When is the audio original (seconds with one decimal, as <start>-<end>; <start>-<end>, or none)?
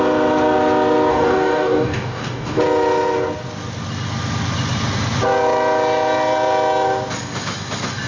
0.0-1.1; 2.6-8.1